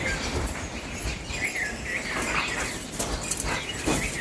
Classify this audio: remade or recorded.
recorded